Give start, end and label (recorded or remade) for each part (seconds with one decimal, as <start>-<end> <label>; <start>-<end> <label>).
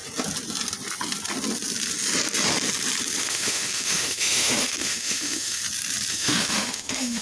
0.0-3.2 recorded; 3.2-5.6 remade; 5.6-6.1 recorded; 6.1-7.2 remade